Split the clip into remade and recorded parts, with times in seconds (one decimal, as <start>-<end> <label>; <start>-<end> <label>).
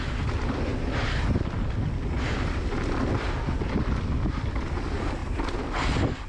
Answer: 0.0-0.7 recorded; 0.7-1.4 remade; 1.4-6.3 recorded